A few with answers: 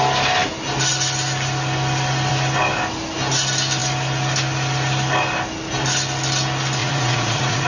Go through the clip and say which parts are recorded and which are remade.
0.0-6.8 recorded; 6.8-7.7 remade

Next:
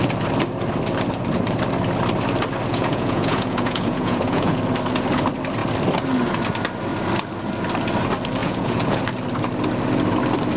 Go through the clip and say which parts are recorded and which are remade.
0.0-2.7 recorded; 2.7-4.6 remade; 4.6-8.4 recorded; 8.4-9.0 remade; 9.0-10.6 recorded

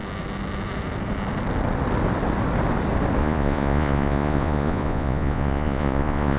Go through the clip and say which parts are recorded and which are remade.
0.0-3.2 recorded; 3.2-6.4 remade

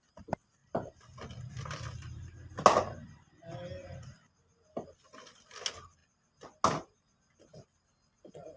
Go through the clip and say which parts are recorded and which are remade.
0.0-8.6 recorded

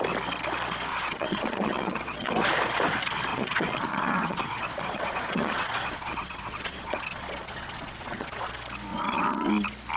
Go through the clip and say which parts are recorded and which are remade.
0.0-0.9 recorded; 0.9-2.3 remade; 2.3-3.3 recorded; 3.3-8.5 remade; 8.5-8.9 recorded; 8.9-9.5 remade; 9.5-10.0 recorded

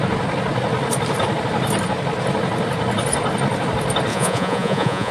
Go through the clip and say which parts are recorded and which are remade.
0.0-4.1 recorded; 4.1-5.1 remade

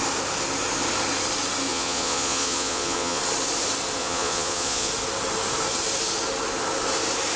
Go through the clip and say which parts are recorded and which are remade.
0.0-1.7 recorded; 1.7-3.2 remade; 3.2-4.0 recorded; 4.0-4.9 remade; 4.9-7.4 recorded

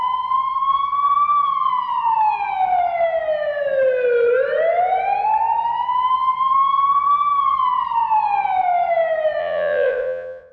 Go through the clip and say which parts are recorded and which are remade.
0.0-9.4 recorded; 9.4-10.5 remade